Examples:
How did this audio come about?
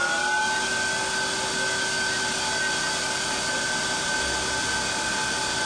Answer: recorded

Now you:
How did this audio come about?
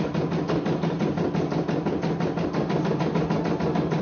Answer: recorded